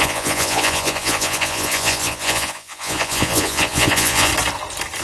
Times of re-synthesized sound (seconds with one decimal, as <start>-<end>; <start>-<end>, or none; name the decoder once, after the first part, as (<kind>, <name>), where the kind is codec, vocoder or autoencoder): 0.0-4.3 (vocoder, Vocos)

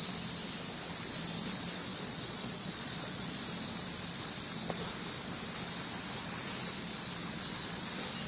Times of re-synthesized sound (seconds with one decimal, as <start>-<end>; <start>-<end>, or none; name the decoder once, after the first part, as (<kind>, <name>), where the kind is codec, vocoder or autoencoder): 1.9-3.4 (vocoder, Vocos)